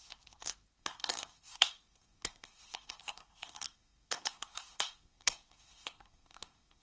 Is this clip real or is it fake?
fake